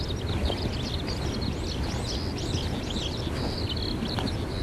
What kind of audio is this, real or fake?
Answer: real